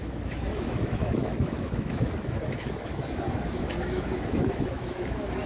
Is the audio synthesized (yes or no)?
yes